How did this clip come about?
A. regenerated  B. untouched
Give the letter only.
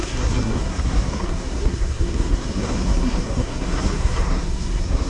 A